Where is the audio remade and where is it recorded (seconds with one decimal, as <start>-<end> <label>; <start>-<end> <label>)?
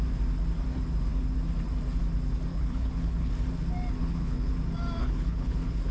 0.0-2.5 recorded; 2.5-3.3 remade; 3.3-4.0 recorded; 4.0-4.5 remade; 4.5-5.0 recorded; 5.0-5.9 remade